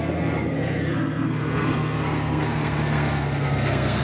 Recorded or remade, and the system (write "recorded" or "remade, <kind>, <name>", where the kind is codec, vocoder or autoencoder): remade, codec, SNAC